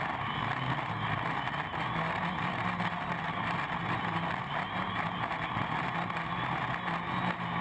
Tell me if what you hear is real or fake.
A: real